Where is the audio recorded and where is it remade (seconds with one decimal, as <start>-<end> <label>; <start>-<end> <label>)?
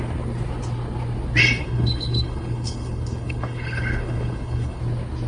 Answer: 0.0-1.6 recorded; 1.6-4.8 remade; 4.8-5.3 recorded